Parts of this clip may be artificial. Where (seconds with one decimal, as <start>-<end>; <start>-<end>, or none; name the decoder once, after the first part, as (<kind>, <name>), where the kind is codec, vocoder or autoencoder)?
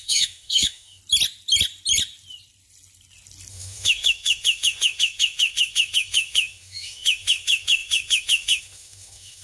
0.0-1.0 (autoencoder, DAC-VAE); 3.5-9.4